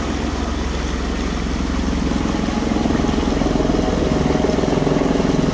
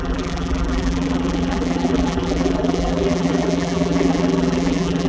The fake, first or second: second